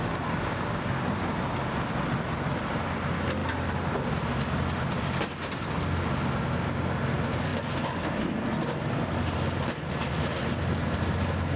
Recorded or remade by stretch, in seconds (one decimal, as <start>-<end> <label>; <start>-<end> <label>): 0.0-3.4 recorded; 3.4-5.1 remade; 5.1-11.6 recorded